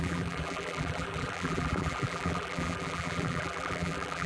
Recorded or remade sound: remade